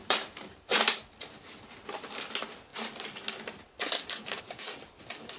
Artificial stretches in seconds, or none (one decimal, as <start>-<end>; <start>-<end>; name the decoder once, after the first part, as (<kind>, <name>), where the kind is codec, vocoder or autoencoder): 0.0-0.6 (vocoder, BigVGAN v2)